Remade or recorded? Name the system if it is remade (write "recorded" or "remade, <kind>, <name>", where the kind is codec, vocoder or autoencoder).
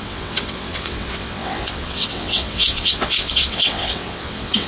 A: remade, vocoder, WaveNeXt